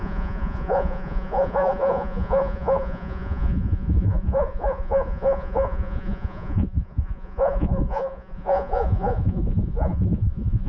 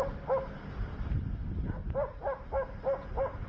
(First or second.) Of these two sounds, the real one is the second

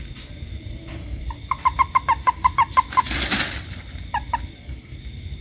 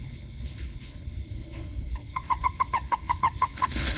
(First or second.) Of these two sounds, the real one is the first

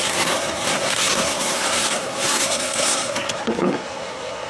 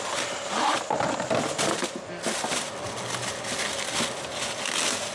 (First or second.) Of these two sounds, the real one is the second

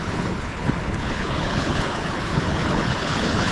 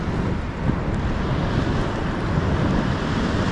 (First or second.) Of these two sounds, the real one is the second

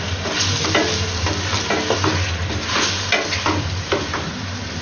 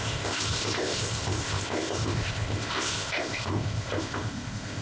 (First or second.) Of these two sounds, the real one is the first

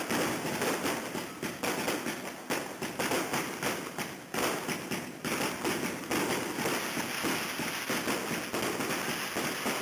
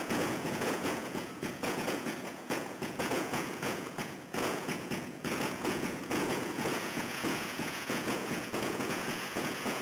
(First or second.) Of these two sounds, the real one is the first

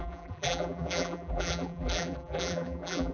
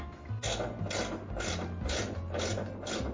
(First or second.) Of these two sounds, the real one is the second